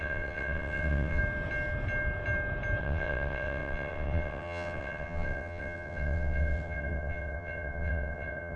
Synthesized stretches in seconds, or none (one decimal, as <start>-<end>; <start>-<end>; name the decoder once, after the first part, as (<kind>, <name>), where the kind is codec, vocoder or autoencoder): 0.0-1.2 (vocoder, WaveNeXt); 2.8-8.6

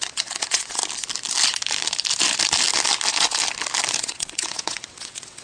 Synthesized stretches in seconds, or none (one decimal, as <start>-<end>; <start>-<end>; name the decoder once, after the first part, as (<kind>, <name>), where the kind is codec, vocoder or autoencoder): 0.0-0.8 (vocoder, WaveNeXt); 4.0-5.4

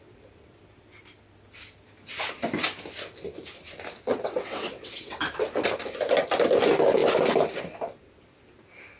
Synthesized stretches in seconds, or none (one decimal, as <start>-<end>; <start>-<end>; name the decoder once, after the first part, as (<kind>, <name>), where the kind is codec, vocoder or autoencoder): 4.1-5.2 (vocoder, WaveNeXt)